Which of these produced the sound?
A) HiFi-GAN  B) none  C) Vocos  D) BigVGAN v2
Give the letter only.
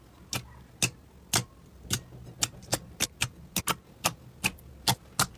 B